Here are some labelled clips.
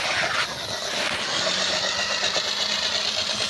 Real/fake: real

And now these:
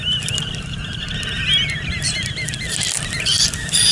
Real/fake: real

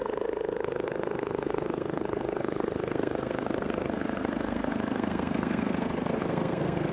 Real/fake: fake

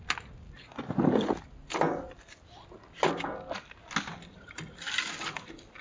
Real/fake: real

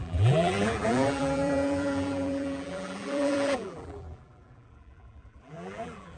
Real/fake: fake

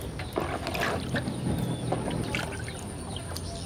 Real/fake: real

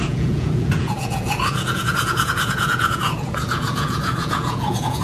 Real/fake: fake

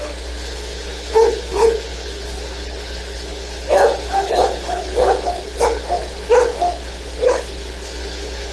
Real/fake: fake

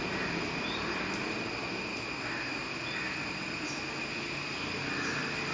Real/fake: real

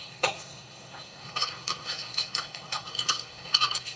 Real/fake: fake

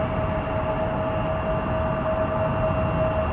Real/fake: real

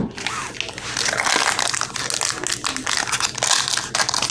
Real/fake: real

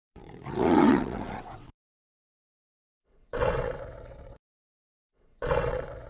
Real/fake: fake